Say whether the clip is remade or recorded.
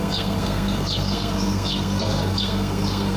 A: remade